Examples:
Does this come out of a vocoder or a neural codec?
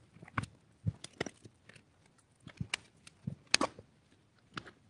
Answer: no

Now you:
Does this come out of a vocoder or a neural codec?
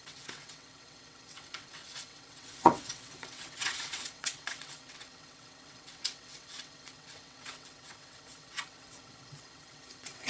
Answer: yes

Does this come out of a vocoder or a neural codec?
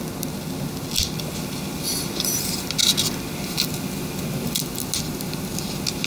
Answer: no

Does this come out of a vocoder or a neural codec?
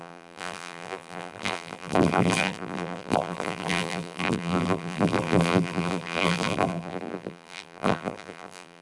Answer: yes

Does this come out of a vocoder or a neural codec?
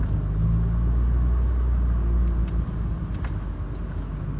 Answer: no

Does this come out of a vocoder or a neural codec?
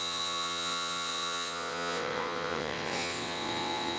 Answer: yes